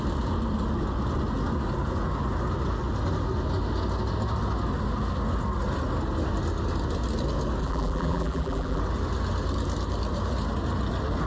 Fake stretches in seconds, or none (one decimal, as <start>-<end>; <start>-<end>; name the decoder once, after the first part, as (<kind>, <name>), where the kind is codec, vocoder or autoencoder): 7.6-8.8 (vocoder, BigVGAN v2)